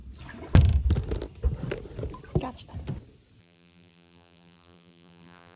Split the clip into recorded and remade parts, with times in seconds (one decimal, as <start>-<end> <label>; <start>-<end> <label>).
0.0-3.4 recorded; 3.4-5.6 remade